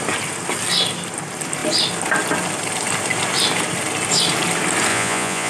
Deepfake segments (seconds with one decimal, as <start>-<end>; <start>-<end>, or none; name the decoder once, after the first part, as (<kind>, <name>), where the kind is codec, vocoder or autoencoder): 4.9-5.5 (vocoder, Vocos)